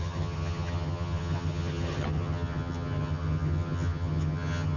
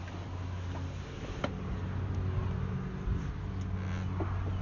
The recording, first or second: second